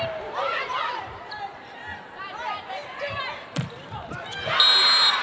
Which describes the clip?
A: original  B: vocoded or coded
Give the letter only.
A